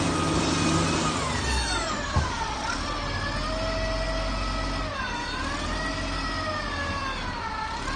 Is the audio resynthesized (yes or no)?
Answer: no